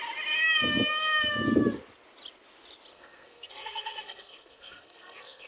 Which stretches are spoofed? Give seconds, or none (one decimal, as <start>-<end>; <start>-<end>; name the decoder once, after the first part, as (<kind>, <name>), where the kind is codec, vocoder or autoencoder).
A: 2.9-5.5 (codec, SNAC)